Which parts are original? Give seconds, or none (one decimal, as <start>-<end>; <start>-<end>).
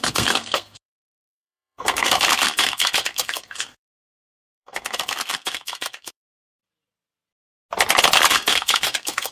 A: 6.6-8.3